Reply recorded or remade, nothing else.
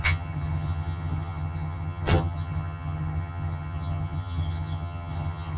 remade